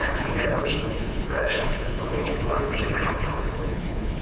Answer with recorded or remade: remade